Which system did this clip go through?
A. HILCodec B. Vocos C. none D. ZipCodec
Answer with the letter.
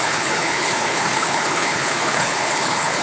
A